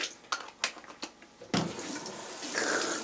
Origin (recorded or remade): recorded